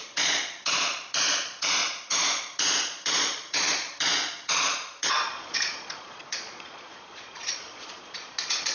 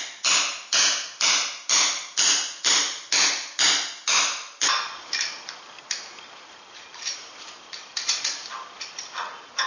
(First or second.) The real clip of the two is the second